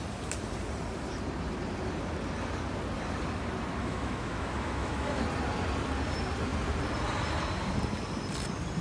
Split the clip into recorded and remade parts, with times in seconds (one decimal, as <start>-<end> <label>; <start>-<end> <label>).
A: 0.0-3.8 recorded; 3.8-5.2 remade; 5.2-8.8 recorded